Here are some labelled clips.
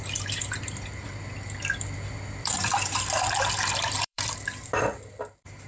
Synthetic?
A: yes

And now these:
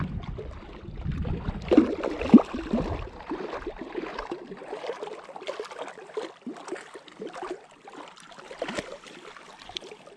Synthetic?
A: no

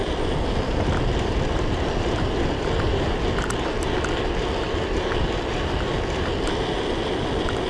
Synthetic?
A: no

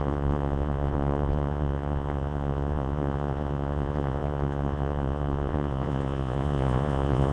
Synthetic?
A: yes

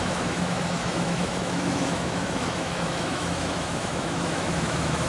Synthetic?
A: yes